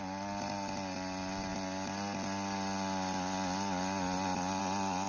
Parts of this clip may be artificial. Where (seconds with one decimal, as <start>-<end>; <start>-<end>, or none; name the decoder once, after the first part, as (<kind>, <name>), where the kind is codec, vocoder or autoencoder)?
none